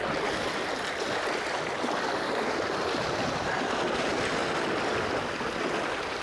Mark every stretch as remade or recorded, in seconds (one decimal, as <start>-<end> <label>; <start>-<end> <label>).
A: 0.0-6.2 recorded